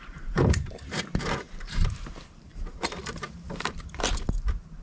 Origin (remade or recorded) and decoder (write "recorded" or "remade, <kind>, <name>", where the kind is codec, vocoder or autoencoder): remade, vocoder, BigVGAN v2